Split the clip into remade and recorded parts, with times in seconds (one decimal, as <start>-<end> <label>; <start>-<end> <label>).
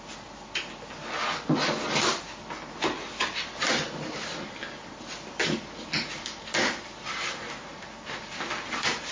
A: 0.0-9.1 recorded